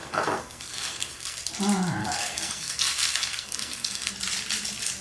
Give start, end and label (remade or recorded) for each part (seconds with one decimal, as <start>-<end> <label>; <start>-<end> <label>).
0.0-1.5 remade; 1.5-2.0 recorded; 2.0-4.1 remade; 4.1-5.0 recorded